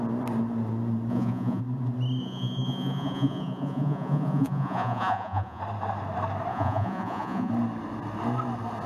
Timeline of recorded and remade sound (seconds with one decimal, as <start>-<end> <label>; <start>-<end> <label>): 0.0-1.1 recorded; 1.1-1.6 remade; 1.6-2.2 recorded; 2.2-5.6 remade; 5.6-6.5 recorded; 6.5-7.5 remade; 7.5-8.9 recorded